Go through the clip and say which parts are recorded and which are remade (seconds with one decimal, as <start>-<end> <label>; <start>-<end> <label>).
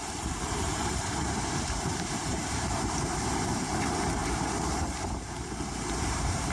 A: 0.0-6.5 remade